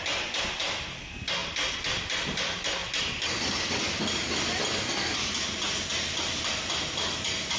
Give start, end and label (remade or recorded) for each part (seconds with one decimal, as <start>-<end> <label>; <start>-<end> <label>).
0.0-7.6 recorded